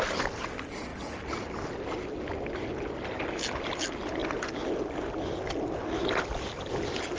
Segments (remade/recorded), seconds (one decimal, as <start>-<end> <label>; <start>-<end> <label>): 0.0-7.2 recorded